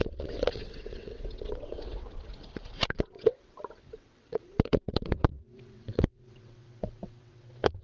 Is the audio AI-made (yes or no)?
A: yes